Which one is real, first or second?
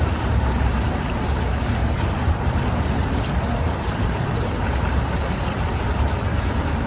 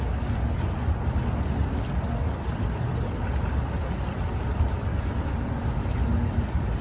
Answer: second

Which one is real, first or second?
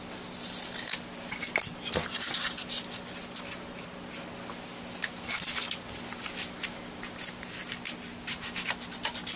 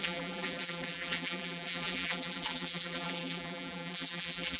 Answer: first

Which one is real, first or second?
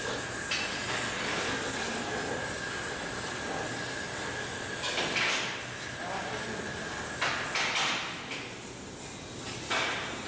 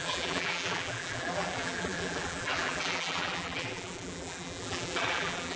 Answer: first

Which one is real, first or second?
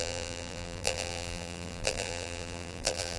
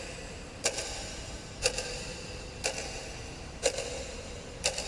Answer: second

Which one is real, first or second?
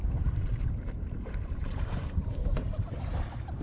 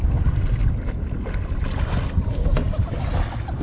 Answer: second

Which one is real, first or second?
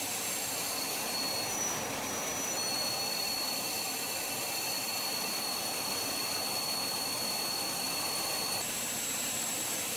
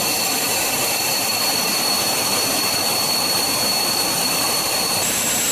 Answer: first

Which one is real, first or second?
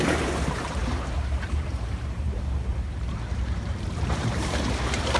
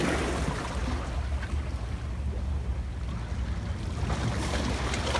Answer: second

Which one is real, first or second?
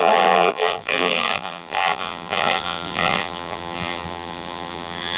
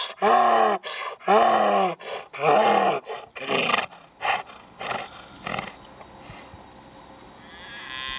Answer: second